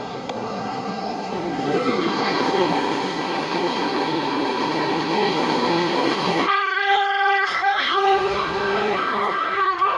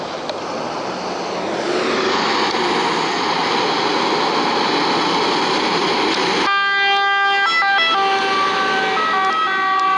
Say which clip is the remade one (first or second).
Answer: first